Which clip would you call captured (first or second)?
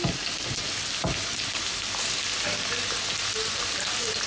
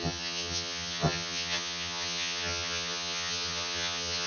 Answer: first